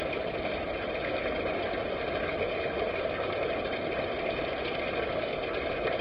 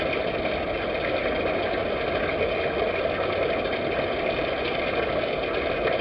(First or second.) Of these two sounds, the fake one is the first